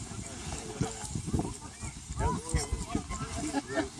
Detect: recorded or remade recorded